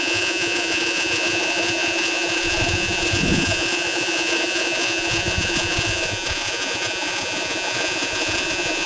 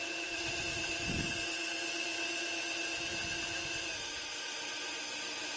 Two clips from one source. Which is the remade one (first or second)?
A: first